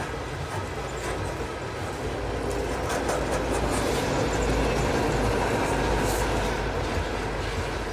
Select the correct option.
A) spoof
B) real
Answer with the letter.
B